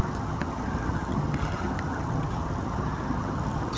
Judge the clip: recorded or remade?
remade